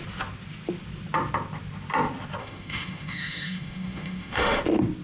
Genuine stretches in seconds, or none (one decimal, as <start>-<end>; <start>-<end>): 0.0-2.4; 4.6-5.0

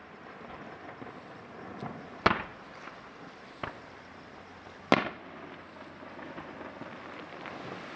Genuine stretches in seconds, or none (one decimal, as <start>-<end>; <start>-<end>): 1.0-2.5; 4.9-8.0

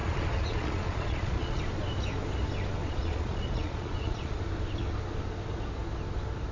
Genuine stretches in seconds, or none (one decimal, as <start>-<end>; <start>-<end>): 1.6-2.8; 4.4-6.5

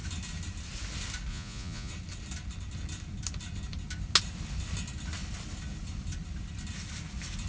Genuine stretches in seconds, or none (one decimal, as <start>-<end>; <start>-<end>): 0.0-1.3; 1.9-7.5

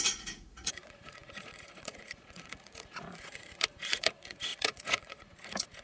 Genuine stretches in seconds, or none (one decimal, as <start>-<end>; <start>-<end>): none